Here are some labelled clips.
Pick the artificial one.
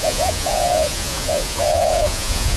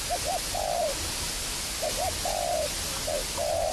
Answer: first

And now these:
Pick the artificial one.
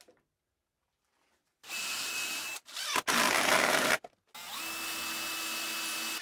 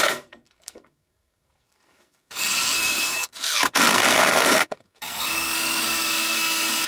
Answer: second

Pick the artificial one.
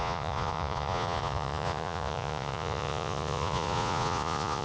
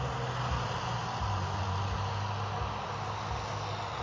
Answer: first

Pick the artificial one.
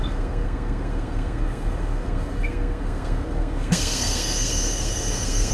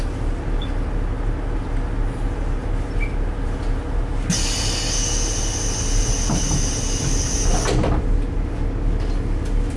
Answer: first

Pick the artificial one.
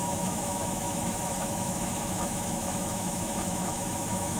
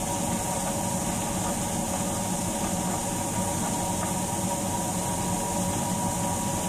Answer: first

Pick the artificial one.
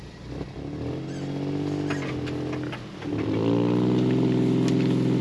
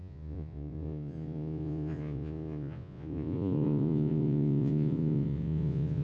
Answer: second